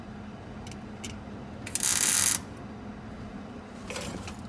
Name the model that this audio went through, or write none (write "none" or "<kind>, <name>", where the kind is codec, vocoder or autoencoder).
none